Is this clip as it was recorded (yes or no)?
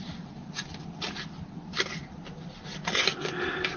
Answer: yes